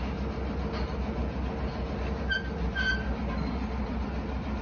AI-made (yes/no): no